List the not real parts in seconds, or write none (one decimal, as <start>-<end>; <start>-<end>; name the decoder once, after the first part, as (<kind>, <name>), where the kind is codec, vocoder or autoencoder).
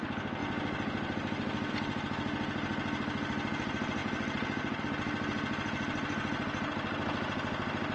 none